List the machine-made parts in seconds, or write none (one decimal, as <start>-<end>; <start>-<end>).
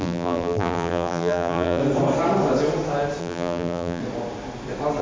0.0-1.8; 3.2-4.0